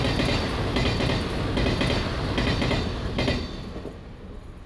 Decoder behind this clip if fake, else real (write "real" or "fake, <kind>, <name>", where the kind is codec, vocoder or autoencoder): real